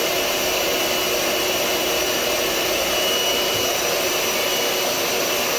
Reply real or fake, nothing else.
real